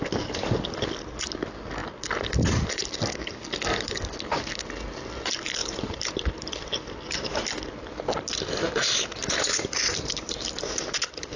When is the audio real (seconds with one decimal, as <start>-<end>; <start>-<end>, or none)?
0.0-5.6; 6.7-9.5; 10.6-11.4